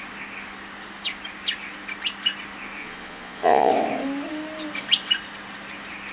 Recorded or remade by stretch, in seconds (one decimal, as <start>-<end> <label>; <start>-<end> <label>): 0.0-2.8 recorded; 2.8-3.7 remade; 3.7-6.1 recorded

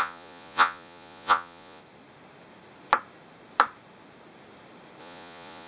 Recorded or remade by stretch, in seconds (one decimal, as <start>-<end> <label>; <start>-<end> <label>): 0.0-1.8 remade; 1.8-5.0 recorded; 5.0-5.7 remade